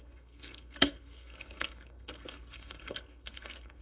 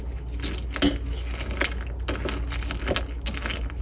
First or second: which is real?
second